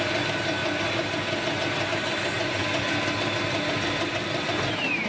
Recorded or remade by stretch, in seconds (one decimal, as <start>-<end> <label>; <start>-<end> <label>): 0.0-0.6 remade; 0.6-1.9 recorded; 1.9-2.6 remade; 2.6-3.7 recorded; 3.7-5.1 remade